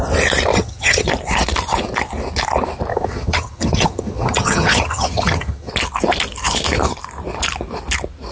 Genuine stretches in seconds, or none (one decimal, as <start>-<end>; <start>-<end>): 0.0-0.5; 1.1-2.9; 5.7-8.3